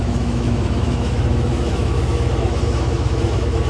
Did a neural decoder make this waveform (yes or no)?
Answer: yes